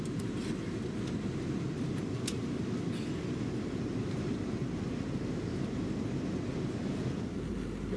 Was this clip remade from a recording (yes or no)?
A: no